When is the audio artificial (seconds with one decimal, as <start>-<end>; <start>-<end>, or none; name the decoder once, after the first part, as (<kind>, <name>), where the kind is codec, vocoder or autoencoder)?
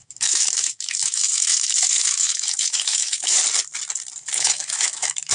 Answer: 0.0-3.4 (autoencoder, DAC-VAE); 4.3-5.3